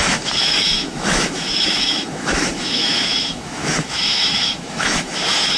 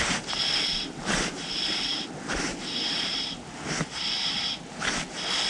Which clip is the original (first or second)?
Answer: second